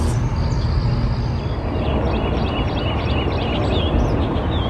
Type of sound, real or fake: real